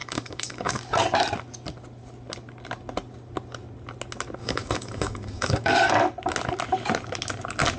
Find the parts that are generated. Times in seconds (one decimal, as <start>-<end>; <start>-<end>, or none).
0.0-0.8; 4.4-5.9